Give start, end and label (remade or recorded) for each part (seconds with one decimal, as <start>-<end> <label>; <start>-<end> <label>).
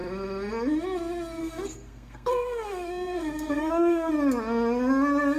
0.0-1.4 recorded; 1.4-4.1 remade; 4.1-5.4 recorded